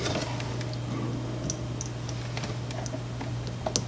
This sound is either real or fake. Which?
real